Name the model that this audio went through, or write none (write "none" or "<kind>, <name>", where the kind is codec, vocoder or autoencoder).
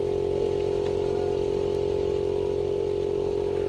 none